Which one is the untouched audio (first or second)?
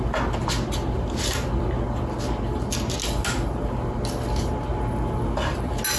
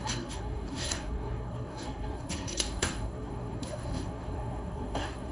first